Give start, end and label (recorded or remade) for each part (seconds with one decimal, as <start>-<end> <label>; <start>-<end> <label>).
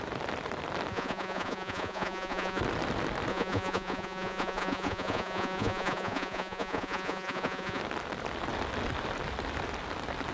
0.0-0.9 recorded; 0.9-2.6 remade; 2.6-3.3 recorded; 3.3-7.8 remade; 7.8-10.3 recorded